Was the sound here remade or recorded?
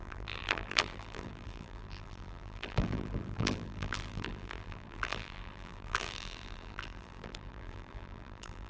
remade